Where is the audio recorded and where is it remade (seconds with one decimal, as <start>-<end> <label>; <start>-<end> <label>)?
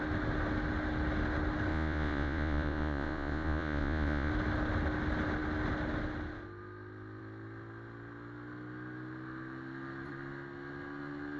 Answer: 0.0-1.7 recorded; 1.7-4.3 remade; 4.3-11.4 recorded